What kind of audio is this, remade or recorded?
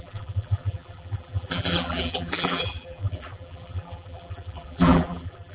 remade